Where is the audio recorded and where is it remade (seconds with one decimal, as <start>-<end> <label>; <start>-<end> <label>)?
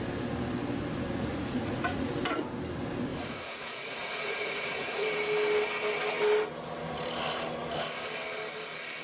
0.0-1.1 recorded; 1.1-2.1 remade; 2.1-3.1 recorded; 3.1-5.1 remade; 5.1-9.0 recorded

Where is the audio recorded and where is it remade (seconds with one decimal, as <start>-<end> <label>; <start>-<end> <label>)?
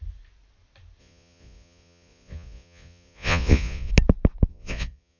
0.0-1.0 recorded; 1.0-3.9 remade; 3.9-4.5 recorded; 4.5-5.2 remade